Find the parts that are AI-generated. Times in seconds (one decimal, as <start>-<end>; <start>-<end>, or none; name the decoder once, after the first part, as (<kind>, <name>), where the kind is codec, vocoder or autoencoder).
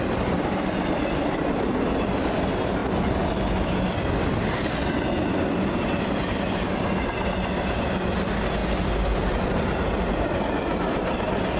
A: none